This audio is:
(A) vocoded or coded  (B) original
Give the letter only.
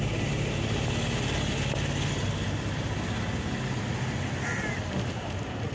B